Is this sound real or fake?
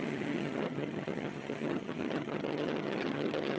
fake